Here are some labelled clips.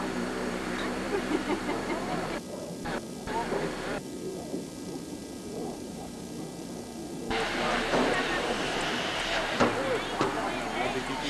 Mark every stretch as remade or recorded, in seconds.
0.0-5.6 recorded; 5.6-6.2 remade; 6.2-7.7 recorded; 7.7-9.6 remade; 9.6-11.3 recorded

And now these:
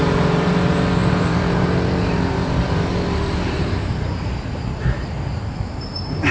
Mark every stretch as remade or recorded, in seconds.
0.0-6.3 remade